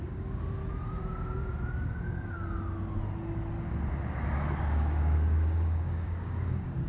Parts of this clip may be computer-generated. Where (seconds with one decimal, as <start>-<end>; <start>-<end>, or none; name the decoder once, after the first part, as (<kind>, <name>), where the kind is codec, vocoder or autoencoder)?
0.0-0.6 (codec, DAC); 4.5-6.9